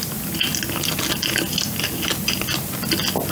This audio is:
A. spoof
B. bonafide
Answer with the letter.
B